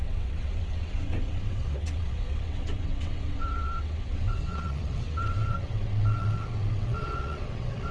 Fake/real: fake